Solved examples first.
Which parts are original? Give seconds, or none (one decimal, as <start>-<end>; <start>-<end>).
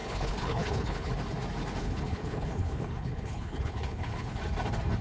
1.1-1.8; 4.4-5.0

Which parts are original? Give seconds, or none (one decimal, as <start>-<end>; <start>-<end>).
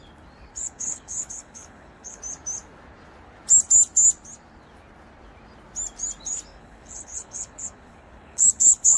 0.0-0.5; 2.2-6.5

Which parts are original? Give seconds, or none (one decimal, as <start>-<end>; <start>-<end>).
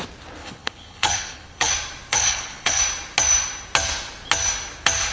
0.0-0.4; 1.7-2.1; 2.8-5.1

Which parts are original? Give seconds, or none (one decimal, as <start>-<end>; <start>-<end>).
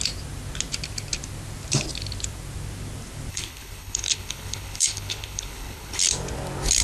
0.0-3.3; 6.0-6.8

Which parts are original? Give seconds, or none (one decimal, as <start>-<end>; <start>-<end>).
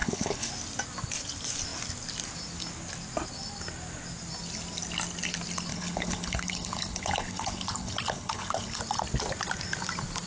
0.5-5.7; 8.8-10.3